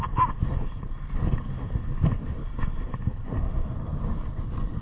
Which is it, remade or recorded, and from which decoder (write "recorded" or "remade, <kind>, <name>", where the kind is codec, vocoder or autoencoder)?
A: recorded